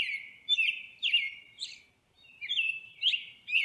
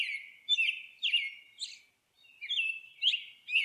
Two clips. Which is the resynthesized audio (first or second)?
first